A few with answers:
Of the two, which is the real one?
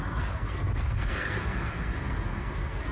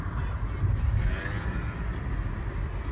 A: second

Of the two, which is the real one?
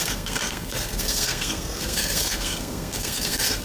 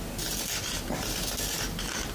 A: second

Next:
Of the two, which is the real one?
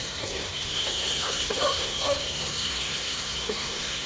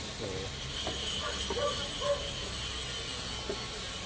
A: second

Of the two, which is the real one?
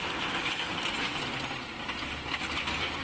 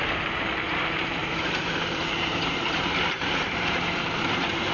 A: first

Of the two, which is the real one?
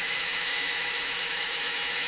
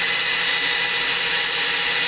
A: second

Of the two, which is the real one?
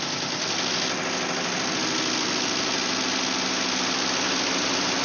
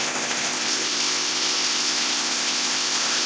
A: first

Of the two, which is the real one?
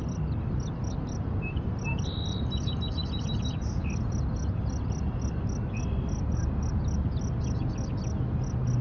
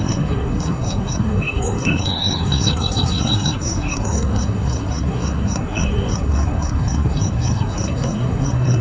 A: first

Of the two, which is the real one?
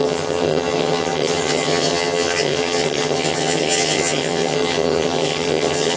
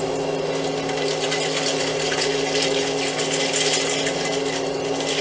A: second